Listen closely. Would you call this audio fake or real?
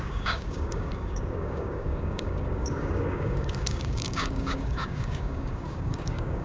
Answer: fake